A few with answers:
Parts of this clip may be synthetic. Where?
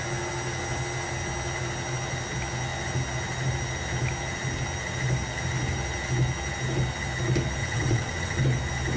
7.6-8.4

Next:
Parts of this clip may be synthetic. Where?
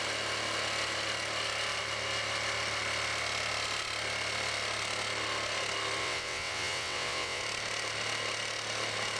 6.0-7.4